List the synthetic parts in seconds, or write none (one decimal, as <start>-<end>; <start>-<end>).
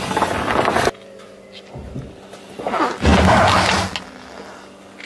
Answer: none